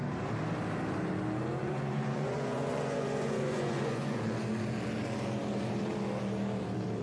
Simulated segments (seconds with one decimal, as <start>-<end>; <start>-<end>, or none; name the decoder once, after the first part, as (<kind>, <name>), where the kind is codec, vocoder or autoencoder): 1.6-4.4 (vocoder, Vocos)